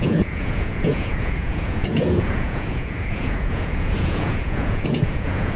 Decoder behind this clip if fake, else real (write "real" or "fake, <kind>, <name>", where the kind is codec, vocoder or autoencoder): fake, vocoder, Vocos